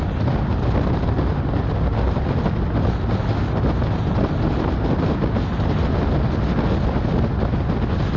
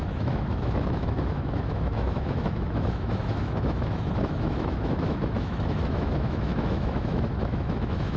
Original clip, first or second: first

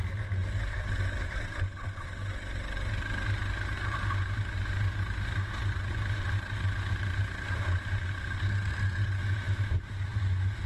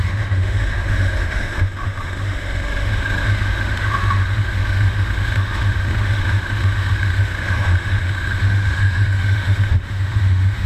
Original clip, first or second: first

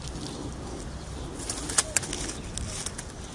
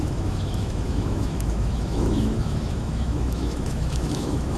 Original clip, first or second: first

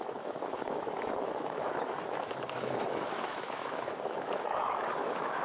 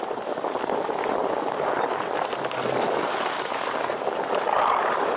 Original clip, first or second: second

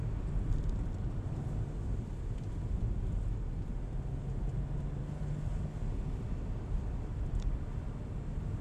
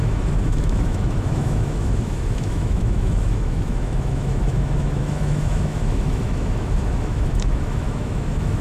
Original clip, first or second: first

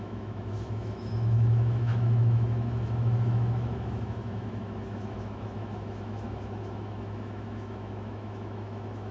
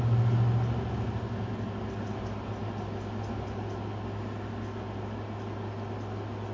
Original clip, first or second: second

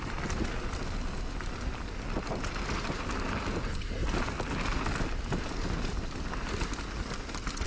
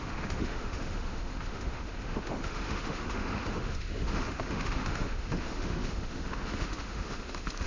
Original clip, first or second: first